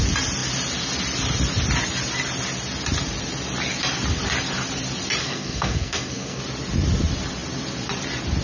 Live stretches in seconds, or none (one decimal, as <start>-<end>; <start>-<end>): 0.0-5.2; 6.4-8.4